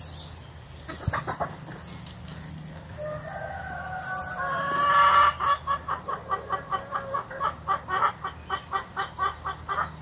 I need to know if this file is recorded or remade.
recorded